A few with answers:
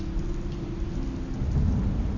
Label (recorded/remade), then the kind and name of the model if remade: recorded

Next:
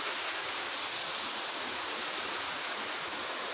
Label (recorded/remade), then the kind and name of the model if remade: remade, vocoder, Vocos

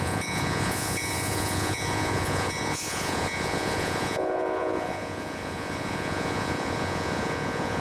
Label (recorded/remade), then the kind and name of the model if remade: remade, vocoder, Vocos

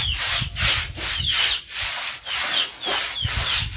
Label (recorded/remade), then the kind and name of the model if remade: recorded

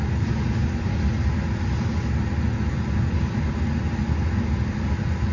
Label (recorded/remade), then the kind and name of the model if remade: recorded